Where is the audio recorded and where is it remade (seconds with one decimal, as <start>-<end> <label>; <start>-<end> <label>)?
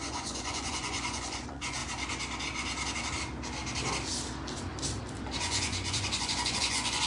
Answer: 0.0-1.8 remade; 1.8-5.4 recorded; 5.4-7.1 remade